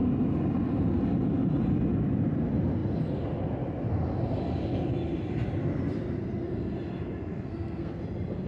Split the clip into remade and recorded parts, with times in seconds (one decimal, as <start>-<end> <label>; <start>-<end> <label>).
0.0-7.3 recorded; 7.3-8.0 remade; 8.0-8.5 recorded